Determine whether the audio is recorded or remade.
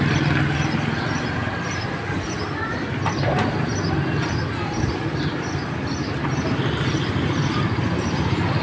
recorded